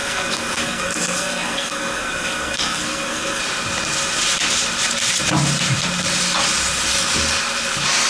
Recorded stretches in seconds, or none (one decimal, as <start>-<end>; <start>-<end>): 3.4-8.1

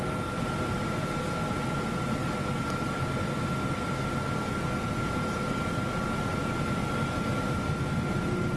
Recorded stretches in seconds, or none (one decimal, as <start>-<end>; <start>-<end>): 0.0-8.6

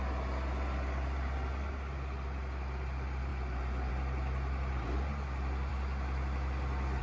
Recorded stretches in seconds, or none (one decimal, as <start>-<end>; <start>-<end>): 0.0-7.0

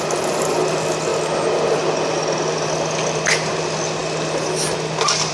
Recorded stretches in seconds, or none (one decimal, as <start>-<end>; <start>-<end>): 0.0-5.3

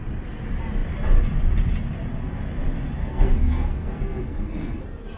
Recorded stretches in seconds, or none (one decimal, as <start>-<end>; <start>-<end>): 0.0-3.0; 4.8-5.2

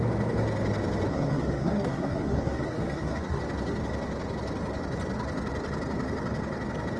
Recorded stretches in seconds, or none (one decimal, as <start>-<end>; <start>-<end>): 0.0-1.1; 3.4-7.0

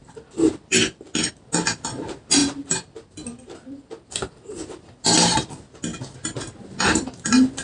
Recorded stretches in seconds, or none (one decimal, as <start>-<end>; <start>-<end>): 0.0-7.6

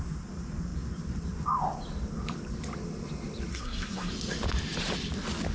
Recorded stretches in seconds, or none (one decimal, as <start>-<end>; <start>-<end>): 0.0-3.5; 4.1-5.5